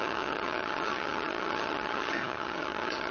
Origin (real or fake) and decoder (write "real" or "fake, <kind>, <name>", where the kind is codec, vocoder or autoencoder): fake, vocoder, HiFi-GAN